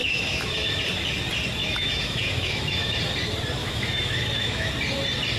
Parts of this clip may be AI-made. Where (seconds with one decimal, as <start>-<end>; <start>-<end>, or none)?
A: 0.0-0.7; 1.6-3.0; 3.6-4.7